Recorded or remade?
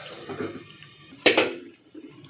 remade